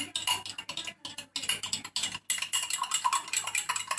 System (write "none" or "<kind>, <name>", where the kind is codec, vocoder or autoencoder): none